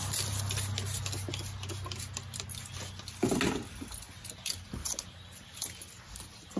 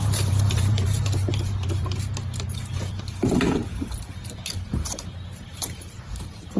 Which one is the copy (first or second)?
second